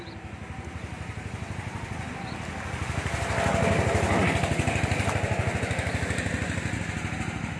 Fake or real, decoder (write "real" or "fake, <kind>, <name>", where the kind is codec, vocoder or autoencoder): real